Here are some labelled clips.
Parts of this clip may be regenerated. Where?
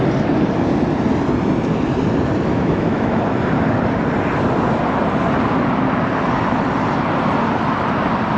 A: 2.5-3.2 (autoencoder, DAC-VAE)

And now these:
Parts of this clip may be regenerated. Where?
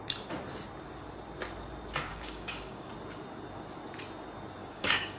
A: 2.1-2.9 (codec, DAC); 4.6-5.2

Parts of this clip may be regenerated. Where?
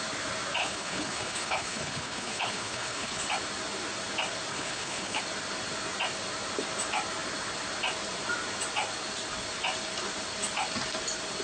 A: 0.6-3.3 (codec, HILCodec); 4.5-5.2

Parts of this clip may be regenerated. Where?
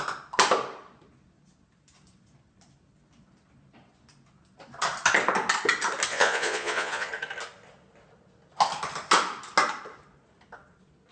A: 6.1-7.1 (vocoder, Vocos)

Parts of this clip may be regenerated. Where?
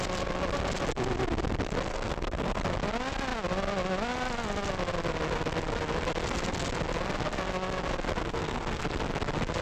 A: 1.9-2.6 (codec, SNAC); 8.2-8.8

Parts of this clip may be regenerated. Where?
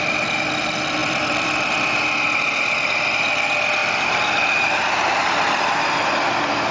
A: 1.0-2.0 (vocoder, BigVGAN v2); 3.8-5.6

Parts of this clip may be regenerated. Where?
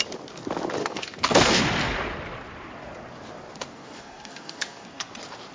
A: 0.8-1.6 (codec, SNAC); 3.7-5.1